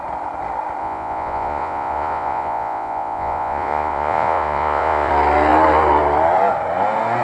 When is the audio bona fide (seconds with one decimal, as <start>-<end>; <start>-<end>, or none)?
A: 0.0-0.8; 5.1-7.2